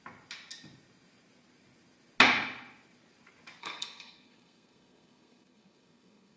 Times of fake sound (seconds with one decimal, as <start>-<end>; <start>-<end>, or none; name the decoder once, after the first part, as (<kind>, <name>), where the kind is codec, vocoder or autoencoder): 3.6-6.4 (codec, SNAC)